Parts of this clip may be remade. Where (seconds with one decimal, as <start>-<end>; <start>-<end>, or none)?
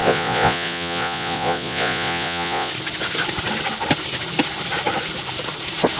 0.0-2.7